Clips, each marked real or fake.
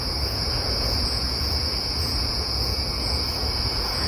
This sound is fake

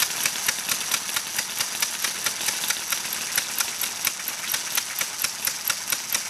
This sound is real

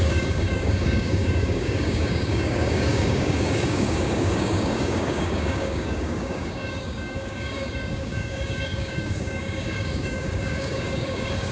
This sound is fake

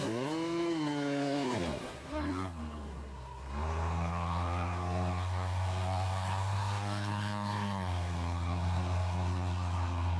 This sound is fake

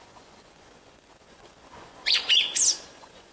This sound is fake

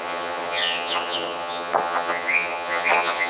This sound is fake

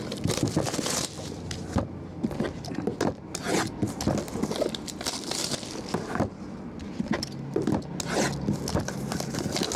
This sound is real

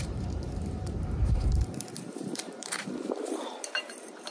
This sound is fake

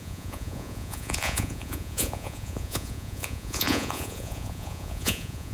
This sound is fake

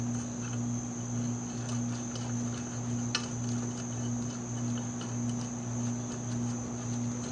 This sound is real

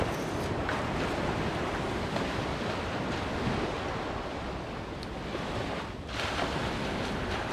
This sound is real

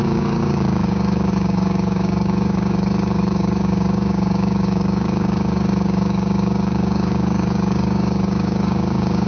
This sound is fake